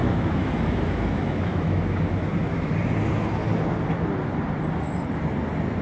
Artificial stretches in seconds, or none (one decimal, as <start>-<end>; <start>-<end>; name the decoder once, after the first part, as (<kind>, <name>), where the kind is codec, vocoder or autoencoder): 0.0-2.7 (autoencoder, DAC-VAE)